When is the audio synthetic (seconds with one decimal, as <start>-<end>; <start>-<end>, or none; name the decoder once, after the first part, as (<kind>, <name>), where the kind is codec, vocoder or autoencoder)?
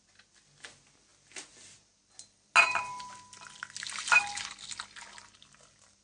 none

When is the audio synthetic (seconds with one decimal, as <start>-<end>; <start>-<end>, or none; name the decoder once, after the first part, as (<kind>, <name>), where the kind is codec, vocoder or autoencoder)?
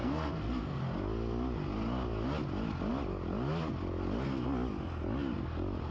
0.0-0.8 (codec, SNAC)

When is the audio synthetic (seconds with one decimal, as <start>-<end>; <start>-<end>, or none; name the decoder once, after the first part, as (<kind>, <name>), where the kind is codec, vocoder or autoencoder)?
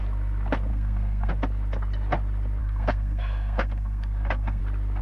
0.7-1.3 (codec, SNAC); 2.6-4.6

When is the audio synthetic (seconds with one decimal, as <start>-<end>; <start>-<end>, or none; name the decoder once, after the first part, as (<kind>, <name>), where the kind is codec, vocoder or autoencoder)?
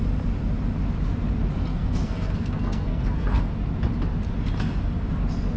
1.7-3.4 (codec, SNAC)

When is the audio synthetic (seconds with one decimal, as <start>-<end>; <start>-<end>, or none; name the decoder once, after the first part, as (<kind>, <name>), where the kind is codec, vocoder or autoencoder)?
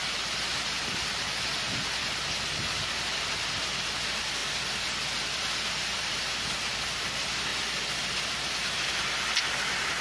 none